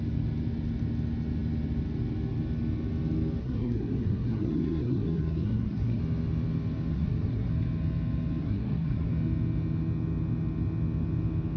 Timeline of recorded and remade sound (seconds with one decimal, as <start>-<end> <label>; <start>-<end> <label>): 0.0-3.4 recorded; 3.4-6.0 remade; 6.0-6.9 recorded; 6.9-7.5 remade; 7.5-8.4 recorded; 8.4-9.1 remade; 9.1-11.6 recorded